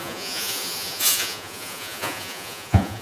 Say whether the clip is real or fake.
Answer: fake